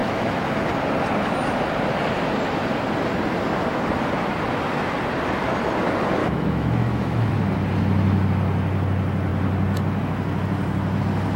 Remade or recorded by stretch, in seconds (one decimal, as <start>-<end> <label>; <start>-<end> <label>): 0.0-0.7 remade; 0.7-6.2 recorded; 6.2-7.3 remade; 7.3-11.4 recorded